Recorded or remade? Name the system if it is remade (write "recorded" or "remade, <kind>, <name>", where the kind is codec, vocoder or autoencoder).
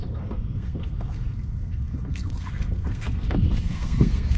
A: remade, codec, SNAC